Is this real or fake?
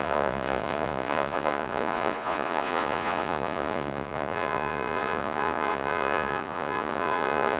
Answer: fake